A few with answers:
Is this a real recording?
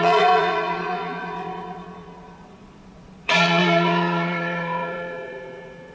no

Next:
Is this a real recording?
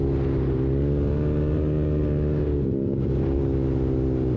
yes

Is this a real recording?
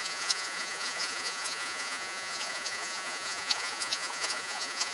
no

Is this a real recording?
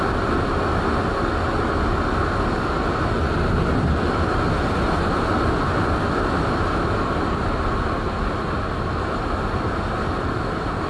yes